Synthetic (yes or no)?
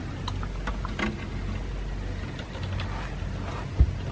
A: no